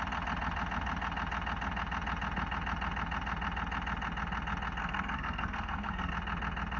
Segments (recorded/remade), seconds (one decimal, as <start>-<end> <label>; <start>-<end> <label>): 0.0-4.8 recorded; 4.8-6.1 remade; 6.1-6.8 recorded